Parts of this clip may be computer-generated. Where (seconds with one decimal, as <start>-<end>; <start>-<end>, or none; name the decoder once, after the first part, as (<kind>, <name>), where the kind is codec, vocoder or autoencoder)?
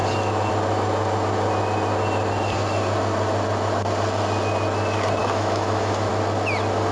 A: 5.2-6.1 (autoencoder, DAC-VAE)